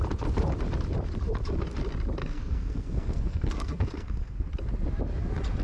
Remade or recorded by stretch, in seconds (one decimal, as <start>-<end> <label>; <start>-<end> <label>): 0.0-2.2 recorded; 2.2-4.5 remade; 4.5-5.6 recorded